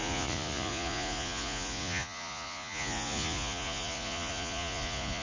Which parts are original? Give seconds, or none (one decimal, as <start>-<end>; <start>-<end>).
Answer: none

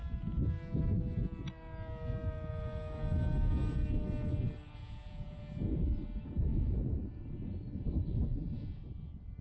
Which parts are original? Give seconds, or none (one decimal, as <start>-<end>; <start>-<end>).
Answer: 0.0-4.8; 5.4-6.5; 7.1-9.4

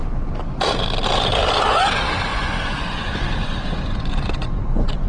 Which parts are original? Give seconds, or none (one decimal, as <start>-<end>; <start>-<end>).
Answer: 0.0-2.3

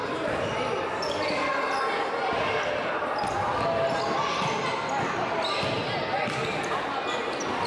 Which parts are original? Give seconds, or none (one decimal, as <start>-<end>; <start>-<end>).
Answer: 0.0-7.7